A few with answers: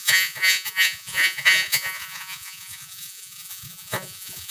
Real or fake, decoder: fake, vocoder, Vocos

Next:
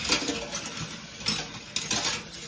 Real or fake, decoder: real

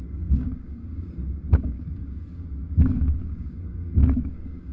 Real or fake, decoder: fake, codec, DAC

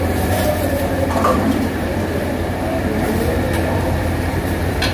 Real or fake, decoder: fake, vocoder, BigVGAN v2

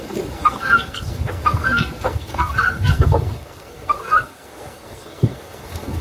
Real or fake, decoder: fake, codec, SNAC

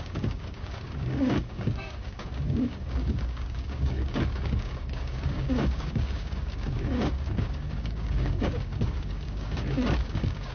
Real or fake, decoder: fake, codec, DAC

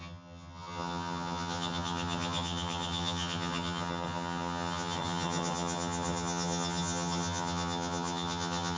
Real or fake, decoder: fake, vocoder, HiFi-GAN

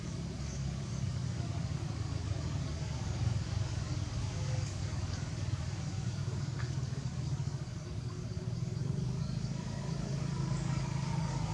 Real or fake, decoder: fake, codec, DAC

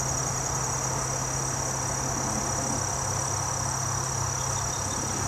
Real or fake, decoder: real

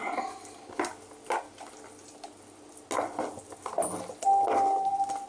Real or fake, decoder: real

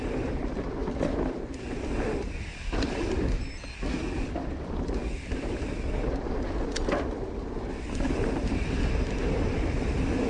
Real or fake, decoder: real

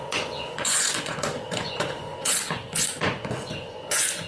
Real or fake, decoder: fake, vocoder, Vocos